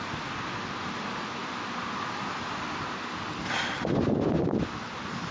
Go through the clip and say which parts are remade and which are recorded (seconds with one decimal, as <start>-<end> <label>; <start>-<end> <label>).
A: 0.0-5.3 recorded